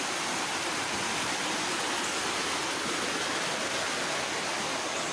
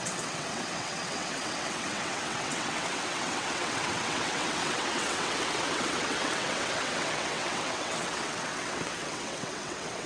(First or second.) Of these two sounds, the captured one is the first